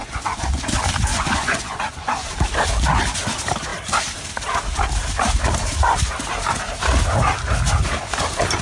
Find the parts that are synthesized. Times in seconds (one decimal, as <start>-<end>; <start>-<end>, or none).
0.0-0.6; 1.1-2.3